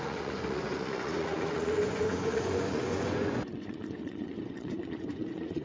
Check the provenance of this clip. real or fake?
fake